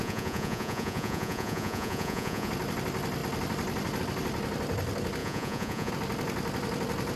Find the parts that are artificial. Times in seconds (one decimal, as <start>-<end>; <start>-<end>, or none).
0.0-2.5; 5.2-5.9